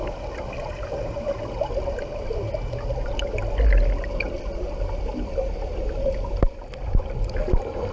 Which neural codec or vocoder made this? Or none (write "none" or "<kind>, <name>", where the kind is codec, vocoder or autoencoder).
none